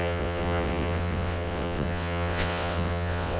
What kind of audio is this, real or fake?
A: fake